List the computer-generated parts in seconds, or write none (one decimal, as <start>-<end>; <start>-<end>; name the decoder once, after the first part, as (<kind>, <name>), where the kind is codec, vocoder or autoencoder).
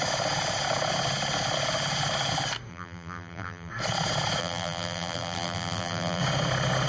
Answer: 2.7-3.7 (vocoder, BigVGAN v2); 4.4-6.2